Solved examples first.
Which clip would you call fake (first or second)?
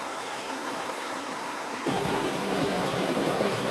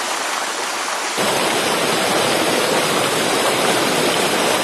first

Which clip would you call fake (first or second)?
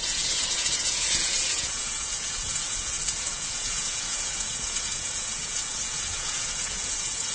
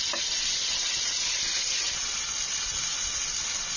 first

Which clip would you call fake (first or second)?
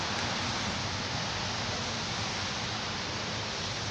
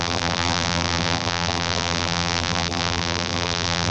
second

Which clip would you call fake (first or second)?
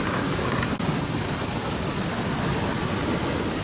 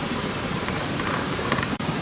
second